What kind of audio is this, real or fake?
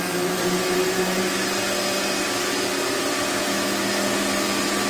real